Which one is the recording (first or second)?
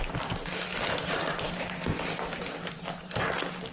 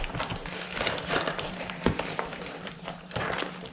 first